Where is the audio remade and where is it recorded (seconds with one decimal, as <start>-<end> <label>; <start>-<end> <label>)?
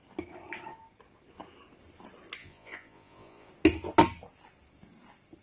0.0-2.4 recorded; 2.4-3.5 remade; 3.5-5.4 recorded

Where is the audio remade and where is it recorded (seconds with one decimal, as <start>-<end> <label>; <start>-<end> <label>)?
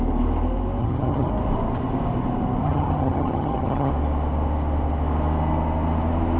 0.0-0.8 recorded; 0.8-1.3 remade; 1.3-2.6 recorded; 2.6-3.9 remade; 3.9-6.4 recorded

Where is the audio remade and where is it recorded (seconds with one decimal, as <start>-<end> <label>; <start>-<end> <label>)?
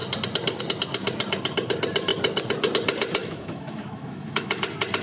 0.0-3.2 recorded; 3.2-4.6 remade; 4.6-5.0 recorded